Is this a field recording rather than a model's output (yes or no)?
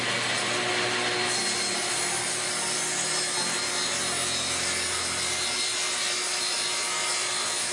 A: yes